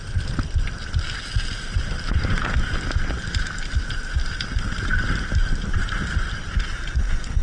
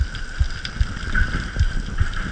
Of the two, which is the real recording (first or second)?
second